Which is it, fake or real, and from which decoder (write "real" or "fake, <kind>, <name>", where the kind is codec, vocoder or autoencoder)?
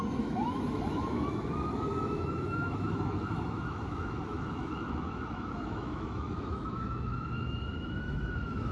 fake, autoencoder, DAC-VAE